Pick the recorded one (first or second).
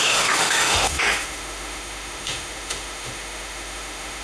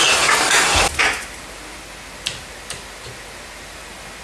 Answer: second